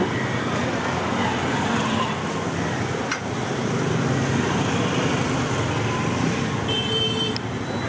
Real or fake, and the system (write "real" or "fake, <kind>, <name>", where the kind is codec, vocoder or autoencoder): real